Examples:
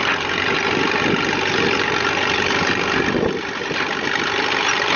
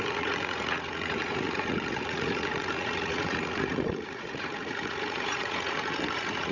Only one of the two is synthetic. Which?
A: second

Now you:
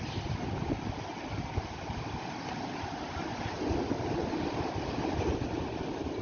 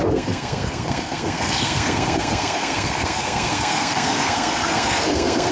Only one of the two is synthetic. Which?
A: second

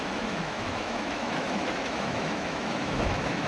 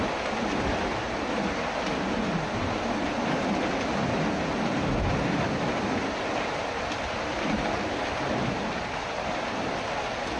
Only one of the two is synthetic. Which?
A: first